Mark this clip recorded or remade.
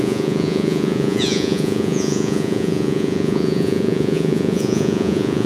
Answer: remade